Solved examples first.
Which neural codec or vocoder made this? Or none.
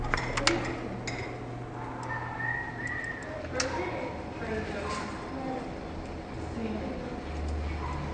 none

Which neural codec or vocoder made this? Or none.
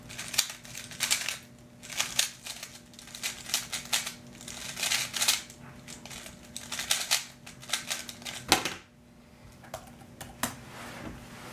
none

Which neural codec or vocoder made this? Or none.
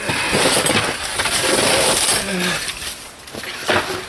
none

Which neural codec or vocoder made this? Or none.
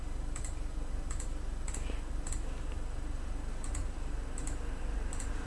none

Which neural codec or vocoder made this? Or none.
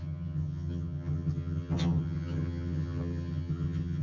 vocoder, HiFi-GAN